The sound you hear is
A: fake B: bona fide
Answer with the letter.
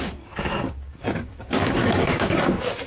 A